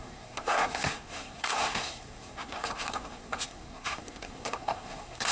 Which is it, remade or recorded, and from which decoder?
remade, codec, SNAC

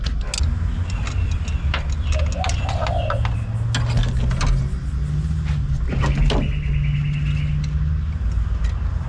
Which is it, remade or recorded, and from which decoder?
recorded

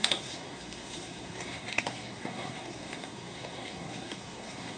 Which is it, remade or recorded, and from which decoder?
remade, codec, SNAC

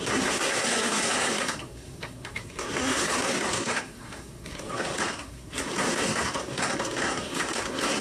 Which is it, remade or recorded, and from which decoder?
remade, codec, SNAC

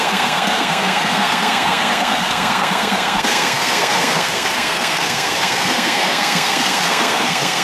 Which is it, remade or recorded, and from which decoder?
remade, codec, SNAC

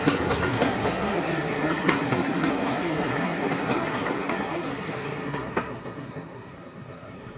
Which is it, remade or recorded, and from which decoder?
remade, codec, SNAC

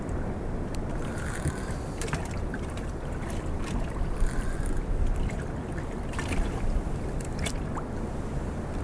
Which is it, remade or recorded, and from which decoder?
recorded